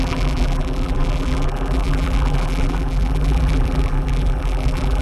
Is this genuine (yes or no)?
no